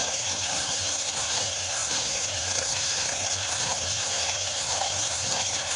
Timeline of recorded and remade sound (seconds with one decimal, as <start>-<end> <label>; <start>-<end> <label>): 0.0-5.8 remade